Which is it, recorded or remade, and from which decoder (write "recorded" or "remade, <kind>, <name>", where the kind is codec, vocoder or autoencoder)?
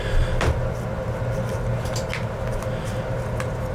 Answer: recorded